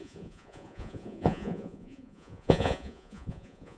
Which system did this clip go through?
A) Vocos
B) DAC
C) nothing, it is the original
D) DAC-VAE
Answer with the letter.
A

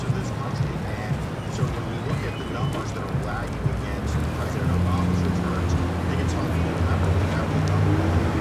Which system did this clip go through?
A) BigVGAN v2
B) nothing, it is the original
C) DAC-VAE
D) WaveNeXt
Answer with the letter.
B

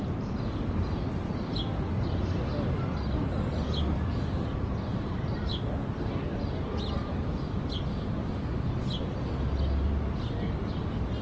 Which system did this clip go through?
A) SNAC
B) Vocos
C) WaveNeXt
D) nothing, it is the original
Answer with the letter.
D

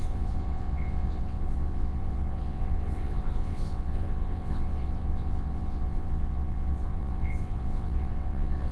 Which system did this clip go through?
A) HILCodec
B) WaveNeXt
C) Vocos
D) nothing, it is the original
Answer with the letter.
B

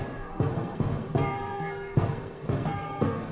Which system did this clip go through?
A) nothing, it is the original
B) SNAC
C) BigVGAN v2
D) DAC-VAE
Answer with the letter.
B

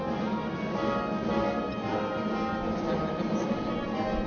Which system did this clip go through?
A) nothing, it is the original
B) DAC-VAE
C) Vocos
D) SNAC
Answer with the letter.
A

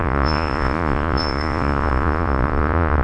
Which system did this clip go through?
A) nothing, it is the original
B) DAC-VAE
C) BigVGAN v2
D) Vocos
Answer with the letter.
D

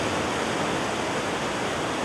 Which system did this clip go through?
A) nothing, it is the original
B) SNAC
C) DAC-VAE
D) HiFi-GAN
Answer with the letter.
A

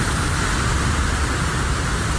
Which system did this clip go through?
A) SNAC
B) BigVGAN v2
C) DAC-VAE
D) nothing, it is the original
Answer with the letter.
D